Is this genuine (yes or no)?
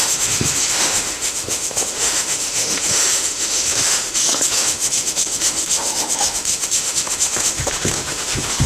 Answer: no